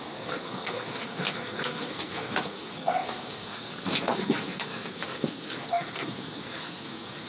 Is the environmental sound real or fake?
fake